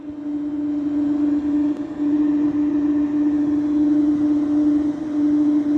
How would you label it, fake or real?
real